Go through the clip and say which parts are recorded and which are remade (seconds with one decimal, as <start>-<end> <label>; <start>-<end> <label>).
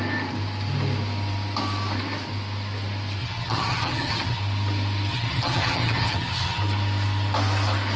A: 0.0-3.2 recorded; 3.2-4.4 remade; 4.4-5.1 recorded; 5.1-6.6 remade; 6.6-8.0 recorded